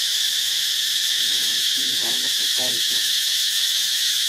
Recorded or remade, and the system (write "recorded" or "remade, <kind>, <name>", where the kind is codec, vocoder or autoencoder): remade, autoencoder, DAC-VAE